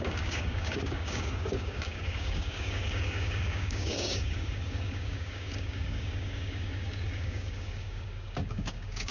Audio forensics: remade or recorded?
remade